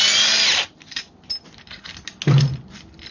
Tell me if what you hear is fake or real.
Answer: real